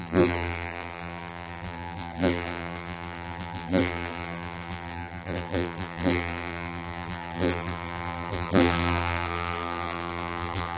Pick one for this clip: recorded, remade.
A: remade